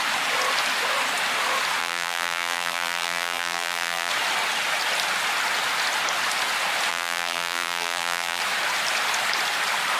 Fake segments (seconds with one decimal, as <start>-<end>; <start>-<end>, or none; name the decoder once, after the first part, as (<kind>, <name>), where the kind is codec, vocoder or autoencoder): 1.8-4.1 (vocoder, BigVGAN v2); 6.9-8.4